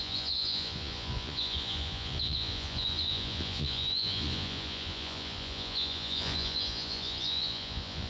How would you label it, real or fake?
fake